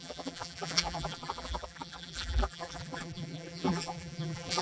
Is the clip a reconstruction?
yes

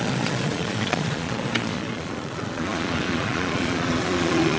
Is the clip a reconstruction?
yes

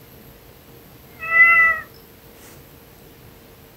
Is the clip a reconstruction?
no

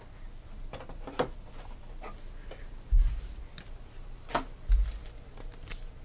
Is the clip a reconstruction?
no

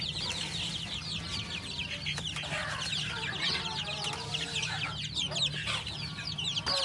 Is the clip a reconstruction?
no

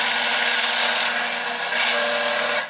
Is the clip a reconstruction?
no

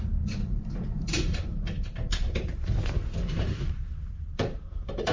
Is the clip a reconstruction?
yes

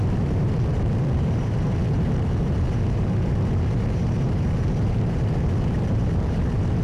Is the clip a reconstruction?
yes